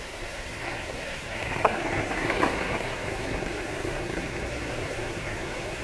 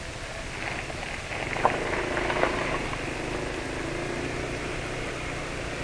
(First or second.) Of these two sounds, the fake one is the first